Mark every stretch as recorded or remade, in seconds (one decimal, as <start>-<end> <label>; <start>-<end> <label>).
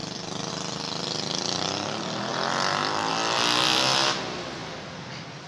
0.0-0.5 remade; 0.5-2.3 recorded; 2.3-3.1 remade; 3.1-5.5 recorded